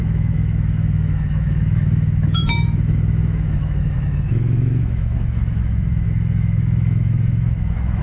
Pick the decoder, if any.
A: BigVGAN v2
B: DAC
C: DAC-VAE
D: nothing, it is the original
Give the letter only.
C